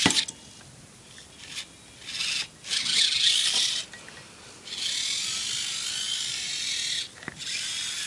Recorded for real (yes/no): yes